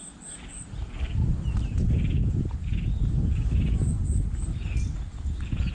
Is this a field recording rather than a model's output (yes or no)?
yes